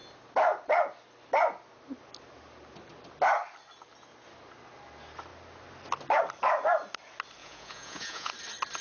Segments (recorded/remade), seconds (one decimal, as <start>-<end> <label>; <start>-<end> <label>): 0.0-7.4 recorded; 7.4-8.3 remade; 8.3-8.8 recorded